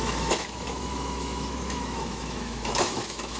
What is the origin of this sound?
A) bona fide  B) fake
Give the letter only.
B